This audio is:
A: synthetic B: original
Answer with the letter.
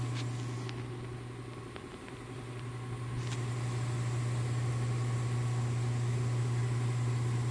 B